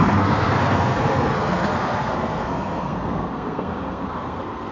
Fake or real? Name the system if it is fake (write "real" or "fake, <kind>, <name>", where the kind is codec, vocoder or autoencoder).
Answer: fake, codec, SNAC